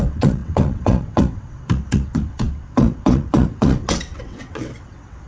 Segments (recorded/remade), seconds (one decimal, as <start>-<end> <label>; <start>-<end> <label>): 0.0-5.3 remade

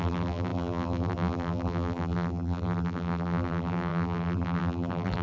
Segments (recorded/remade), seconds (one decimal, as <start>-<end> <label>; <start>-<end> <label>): 0.0-5.2 remade

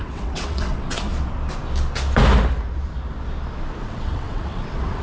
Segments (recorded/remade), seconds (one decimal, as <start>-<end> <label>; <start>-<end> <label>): 0.0-1.1 remade; 1.1-3.8 recorded; 3.8-5.0 remade

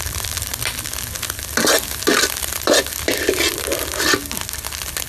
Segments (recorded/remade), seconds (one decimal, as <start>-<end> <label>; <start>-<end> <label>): 0.0-5.1 recorded

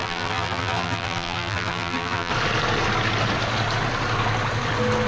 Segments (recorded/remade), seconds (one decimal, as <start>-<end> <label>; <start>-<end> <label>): 0.0-2.3 remade; 2.3-5.1 recorded

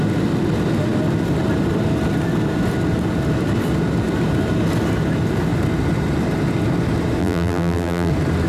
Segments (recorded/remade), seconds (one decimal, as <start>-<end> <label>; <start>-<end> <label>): 0.0-7.2 recorded; 7.2-8.1 remade; 8.1-8.5 recorded

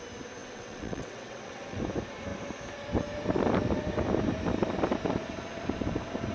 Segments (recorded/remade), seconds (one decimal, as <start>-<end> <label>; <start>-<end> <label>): 0.0-0.4 recorded; 0.4-1.8 remade; 1.8-6.3 recorded